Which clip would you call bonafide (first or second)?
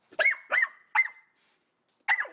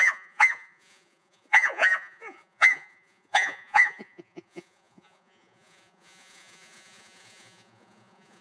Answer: first